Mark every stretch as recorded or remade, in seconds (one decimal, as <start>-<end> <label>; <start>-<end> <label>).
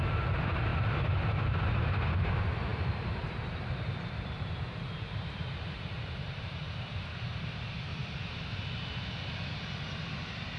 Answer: 0.0-7.9 remade; 7.9-10.2 recorded; 10.2-10.6 remade